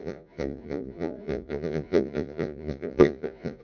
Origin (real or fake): fake